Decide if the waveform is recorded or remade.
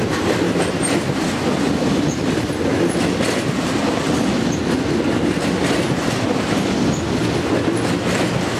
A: recorded